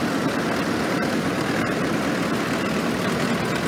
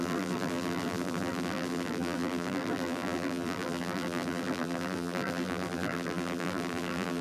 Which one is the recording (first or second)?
first